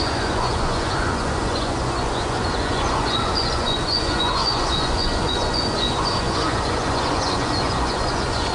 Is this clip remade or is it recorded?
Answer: remade